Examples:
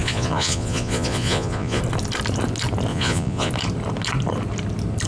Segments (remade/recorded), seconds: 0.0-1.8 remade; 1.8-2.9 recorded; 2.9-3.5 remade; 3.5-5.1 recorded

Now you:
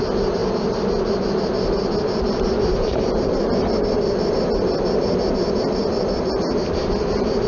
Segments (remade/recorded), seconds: 0.0-7.5 recorded

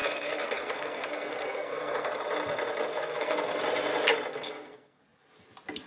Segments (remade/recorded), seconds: 0.0-2.1 remade; 2.1-3.0 recorded; 3.0-3.6 remade; 3.6-4.3 recorded; 4.3-5.0 remade; 5.0-5.9 recorded

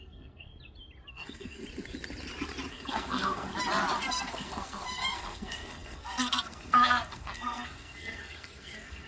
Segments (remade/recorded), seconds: 0.0-0.5 remade; 0.5-1.1 recorded; 1.1-1.6 remade; 1.6-2.7 recorded; 2.7-3.5 remade; 3.5-4.0 recorded; 4.0-9.1 remade

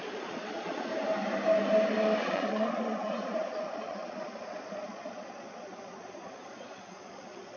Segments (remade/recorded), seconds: 0.0-0.9 remade; 0.9-2.2 recorded; 2.2-7.6 remade

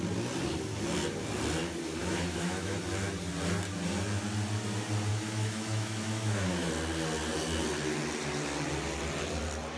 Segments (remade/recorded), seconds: 0.0-2.0 recorded; 2.0-2.8 remade; 2.8-5.1 recorded; 5.1-6.7 remade; 6.7-9.8 recorded

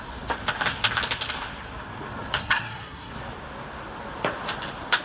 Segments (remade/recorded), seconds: 0.0-2.4 recorded; 2.4-3.1 remade; 3.1-5.0 recorded

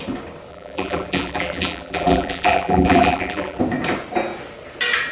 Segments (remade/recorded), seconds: 0.0-0.5 recorded; 0.5-3.6 remade; 3.6-5.1 recorded